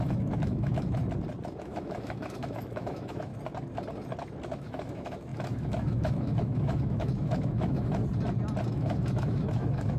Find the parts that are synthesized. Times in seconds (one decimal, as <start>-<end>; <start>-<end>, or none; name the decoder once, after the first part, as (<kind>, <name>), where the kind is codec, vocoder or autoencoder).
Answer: 0.0-1.0 (autoencoder, DAC-VAE); 1.6-3.3; 4.6-8.0; 8.7-10.0